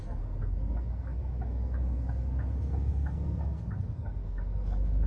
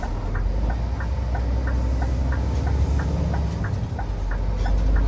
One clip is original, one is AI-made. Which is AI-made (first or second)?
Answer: first